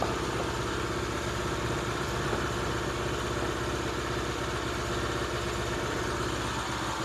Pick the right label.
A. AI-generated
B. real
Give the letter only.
B